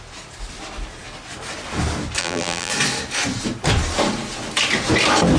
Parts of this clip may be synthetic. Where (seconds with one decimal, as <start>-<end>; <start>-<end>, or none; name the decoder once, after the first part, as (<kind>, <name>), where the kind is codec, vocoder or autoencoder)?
2.2-2.7 (vocoder, BigVGAN v2)